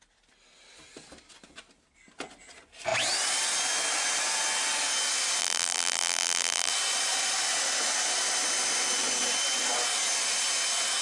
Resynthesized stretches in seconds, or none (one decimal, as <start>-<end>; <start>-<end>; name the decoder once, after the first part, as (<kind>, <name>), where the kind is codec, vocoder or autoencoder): 5.4-6.7 (vocoder, BigVGAN v2)

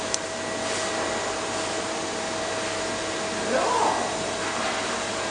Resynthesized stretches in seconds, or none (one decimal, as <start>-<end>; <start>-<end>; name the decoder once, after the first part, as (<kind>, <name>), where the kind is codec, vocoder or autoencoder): none

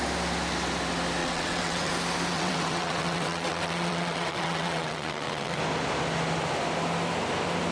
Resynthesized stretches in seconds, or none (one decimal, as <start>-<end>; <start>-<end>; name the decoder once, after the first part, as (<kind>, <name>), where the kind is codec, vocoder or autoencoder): 1.2-1.9 (vocoder, WaveNeXt); 2.3-5.6